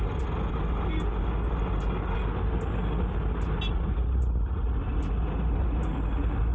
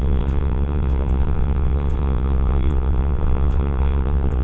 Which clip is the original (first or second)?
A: first